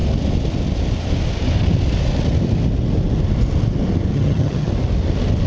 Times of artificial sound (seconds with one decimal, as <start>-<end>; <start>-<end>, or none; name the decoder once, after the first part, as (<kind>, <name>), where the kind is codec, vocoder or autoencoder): 4.1-4.7 (vocoder, HiFi-GAN)